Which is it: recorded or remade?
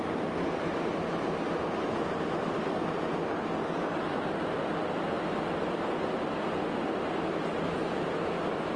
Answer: recorded